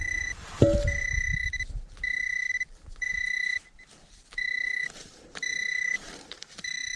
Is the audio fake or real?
fake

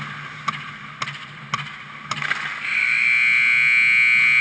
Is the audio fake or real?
real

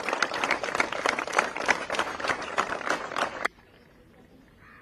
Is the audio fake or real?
fake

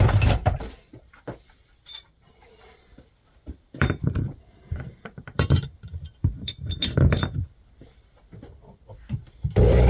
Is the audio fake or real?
fake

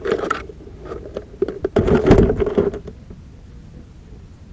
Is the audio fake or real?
real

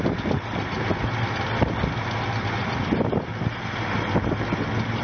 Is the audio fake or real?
real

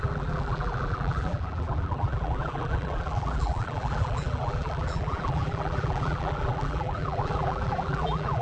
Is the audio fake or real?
fake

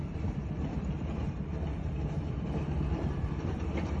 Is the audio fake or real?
fake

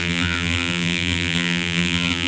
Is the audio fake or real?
fake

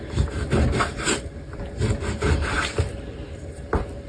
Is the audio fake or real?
fake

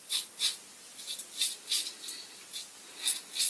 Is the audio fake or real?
real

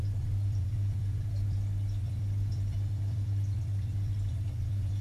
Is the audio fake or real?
fake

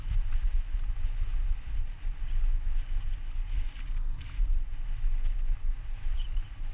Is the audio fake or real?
real